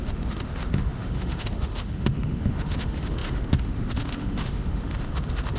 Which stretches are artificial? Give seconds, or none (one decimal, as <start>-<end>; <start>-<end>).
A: 0.0-5.6